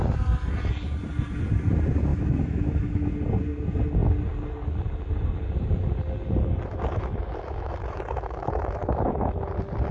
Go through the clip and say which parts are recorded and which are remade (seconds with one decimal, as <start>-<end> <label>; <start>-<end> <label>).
0.0-2.1 recorded; 2.1-3.1 remade; 3.1-6.7 recorded; 6.7-9.5 remade; 9.5-9.9 recorded

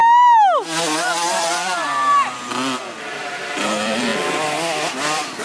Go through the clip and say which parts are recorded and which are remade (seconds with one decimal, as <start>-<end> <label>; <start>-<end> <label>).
0.0-3.2 recorded; 3.2-4.1 remade; 4.1-4.9 recorded; 4.9-5.4 remade

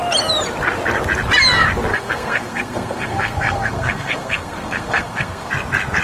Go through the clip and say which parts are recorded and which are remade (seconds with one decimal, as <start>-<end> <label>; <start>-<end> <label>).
0.0-1.9 recorded; 1.9-5.5 remade; 5.5-6.0 recorded

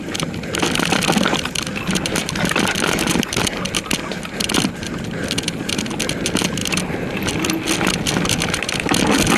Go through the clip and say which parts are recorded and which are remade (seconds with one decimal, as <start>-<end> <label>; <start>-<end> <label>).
0.0-9.4 recorded

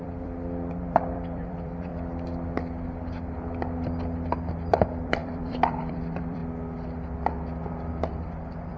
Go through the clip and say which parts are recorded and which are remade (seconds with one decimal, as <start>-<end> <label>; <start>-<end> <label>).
0.0-1.9 remade; 1.9-4.5 recorded; 4.5-6.4 remade; 6.4-8.1 recorded; 8.1-8.8 remade